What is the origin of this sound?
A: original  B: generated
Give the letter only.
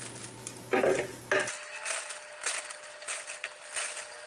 A